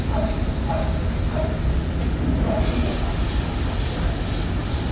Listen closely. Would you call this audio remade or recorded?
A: recorded